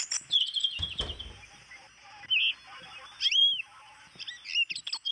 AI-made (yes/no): no